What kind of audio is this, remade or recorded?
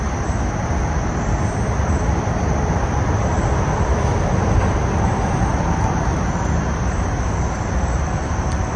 recorded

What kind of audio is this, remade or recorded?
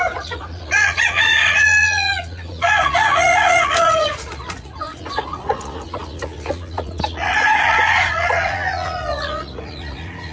remade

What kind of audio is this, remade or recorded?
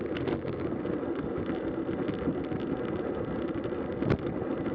recorded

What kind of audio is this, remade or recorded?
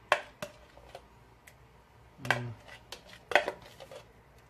recorded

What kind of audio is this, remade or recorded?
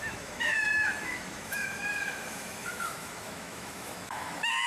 remade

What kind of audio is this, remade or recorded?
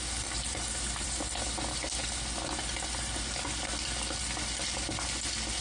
recorded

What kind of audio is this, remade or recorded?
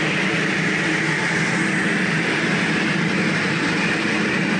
recorded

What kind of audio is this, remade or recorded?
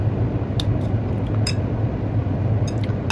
recorded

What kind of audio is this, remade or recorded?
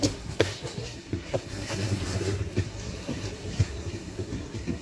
remade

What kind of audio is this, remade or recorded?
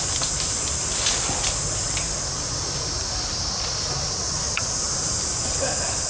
recorded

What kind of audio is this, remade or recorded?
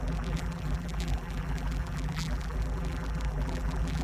remade